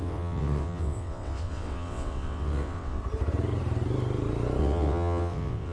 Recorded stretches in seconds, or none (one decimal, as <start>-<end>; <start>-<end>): 3.0-4.6